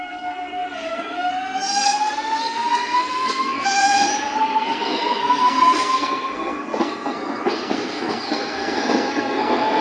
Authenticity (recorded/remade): remade